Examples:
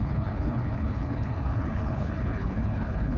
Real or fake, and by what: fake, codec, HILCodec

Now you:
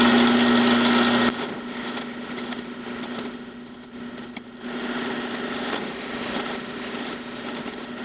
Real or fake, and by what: real